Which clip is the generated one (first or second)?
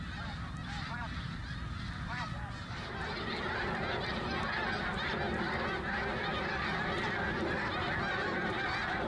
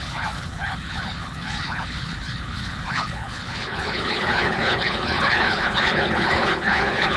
second